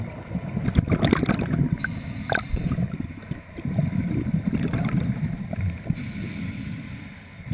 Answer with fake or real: fake